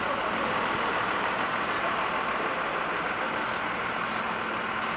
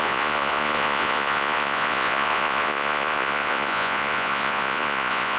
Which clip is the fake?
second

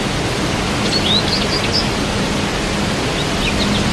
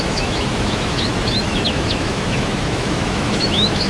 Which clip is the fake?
second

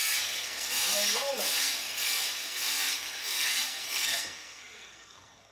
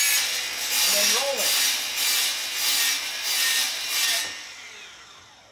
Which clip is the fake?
first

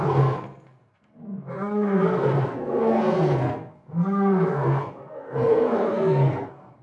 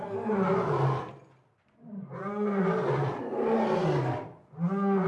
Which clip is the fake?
first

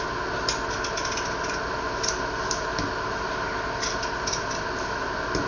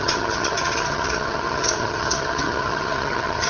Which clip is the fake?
second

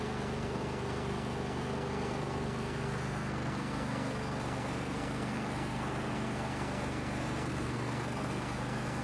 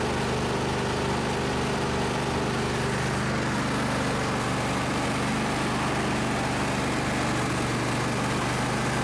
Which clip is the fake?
first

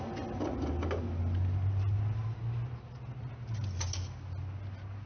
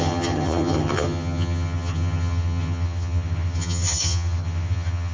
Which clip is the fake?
second